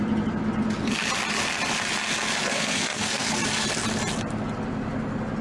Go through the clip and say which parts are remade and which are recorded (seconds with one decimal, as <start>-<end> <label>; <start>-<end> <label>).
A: 0.0-2.4 recorded; 2.4-3.4 remade; 3.4-5.4 recorded